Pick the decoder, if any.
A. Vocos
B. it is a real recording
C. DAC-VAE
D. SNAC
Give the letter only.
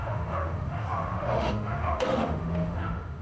C